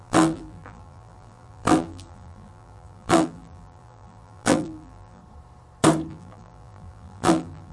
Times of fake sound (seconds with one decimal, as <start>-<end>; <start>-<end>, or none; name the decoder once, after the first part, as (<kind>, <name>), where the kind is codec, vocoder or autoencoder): 0.0-5.2 (vocoder, BigVGAN v2); 6.1-7.7